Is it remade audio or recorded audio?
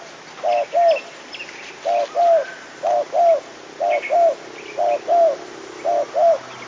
recorded